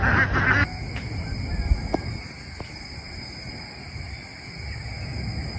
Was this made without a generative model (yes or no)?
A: yes